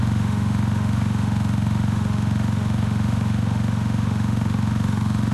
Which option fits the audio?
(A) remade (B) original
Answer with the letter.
A